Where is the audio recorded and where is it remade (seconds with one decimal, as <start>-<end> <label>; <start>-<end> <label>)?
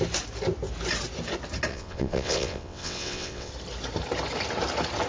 0.0-1.7 recorded; 1.7-3.5 remade; 3.5-5.1 recorded